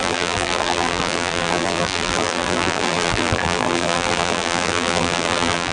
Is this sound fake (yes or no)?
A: yes